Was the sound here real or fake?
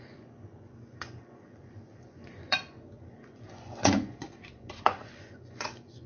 fake